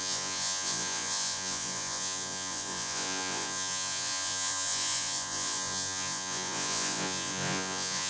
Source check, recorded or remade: remade